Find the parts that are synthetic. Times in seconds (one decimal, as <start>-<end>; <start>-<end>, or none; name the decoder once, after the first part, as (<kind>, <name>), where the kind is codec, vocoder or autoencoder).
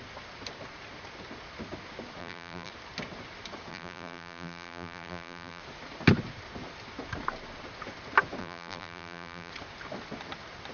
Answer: 2.2-2.7 (vocoder, BigVGAN v2); 3.7-5.6; 8.4-9.5